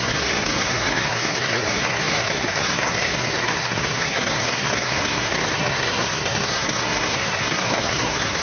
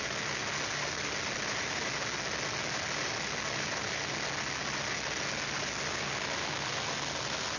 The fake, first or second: first